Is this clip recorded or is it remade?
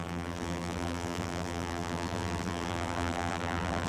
remade